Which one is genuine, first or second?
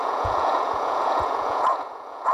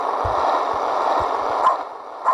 second